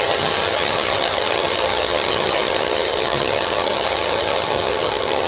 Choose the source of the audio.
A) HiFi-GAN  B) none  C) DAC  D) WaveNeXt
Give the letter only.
A